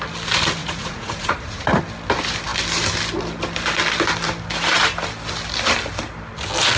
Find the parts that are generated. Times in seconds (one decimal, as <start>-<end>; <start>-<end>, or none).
0.6-1.8